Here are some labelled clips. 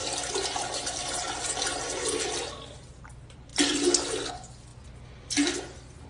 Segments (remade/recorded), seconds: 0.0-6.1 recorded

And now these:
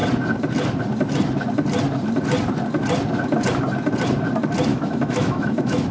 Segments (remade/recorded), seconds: 0.0-4.7 recorded; 4.7-5.9 remade

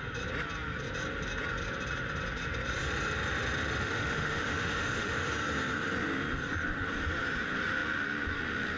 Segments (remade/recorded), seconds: 0.0-3.8 recorded; 3.8-5.3 remade; 5.3-8.8 recorded

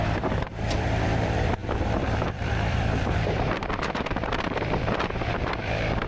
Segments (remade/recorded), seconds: 0.0-6.1 remade

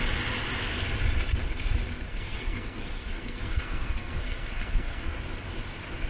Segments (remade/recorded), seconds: 0.0-2.1 recorded; 2.1-5.1 remade; 5.1-6.1 recorded

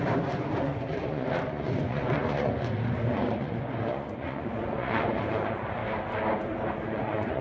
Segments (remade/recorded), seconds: 0.0-5.8 remade; 5.8-6.7 recorded; 6.7-7.4 remade